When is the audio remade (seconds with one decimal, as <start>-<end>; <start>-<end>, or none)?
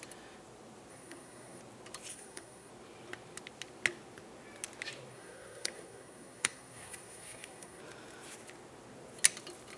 0.9-1.6; 2.1-2.7; 5.1-7.8